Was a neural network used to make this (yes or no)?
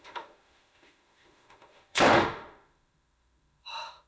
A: yes